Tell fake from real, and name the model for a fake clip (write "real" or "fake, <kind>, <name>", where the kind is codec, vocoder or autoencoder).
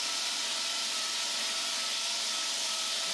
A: real